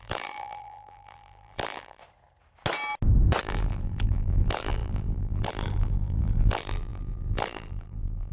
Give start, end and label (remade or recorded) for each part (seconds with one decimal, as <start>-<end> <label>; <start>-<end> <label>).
0.0-2.0 remade; 2.0-3.4 recorded; 3.4-8.3 remade